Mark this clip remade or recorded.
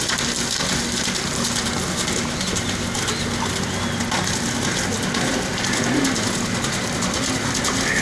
recorded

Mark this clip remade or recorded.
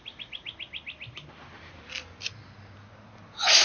recorded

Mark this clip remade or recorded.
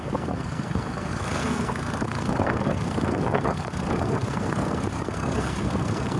remade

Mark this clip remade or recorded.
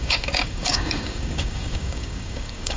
remade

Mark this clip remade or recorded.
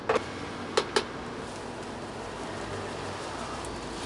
recorded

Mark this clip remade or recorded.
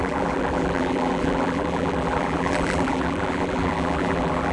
remade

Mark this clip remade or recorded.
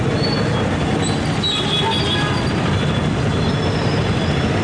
recorded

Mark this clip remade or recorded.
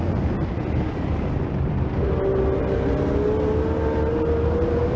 recorded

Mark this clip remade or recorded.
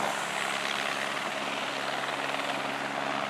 recorded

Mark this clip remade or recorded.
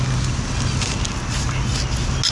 recorded